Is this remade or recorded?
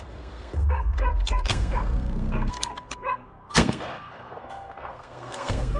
remade